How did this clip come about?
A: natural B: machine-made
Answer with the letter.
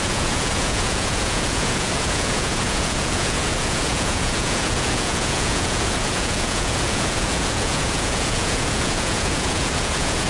B